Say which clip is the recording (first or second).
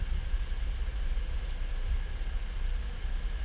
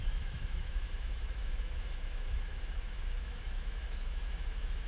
first